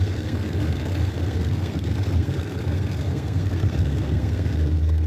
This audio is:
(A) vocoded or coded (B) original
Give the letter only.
A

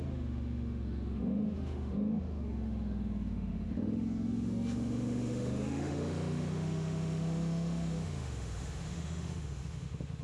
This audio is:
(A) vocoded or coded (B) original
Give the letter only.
A